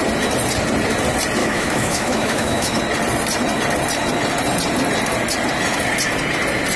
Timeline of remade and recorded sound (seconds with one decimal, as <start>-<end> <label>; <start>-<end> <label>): 0.0-1.4 recorded; 1.4-2.8 remade; 2.8-6.8 recorded